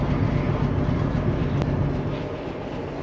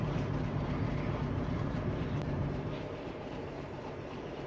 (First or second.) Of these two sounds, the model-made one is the second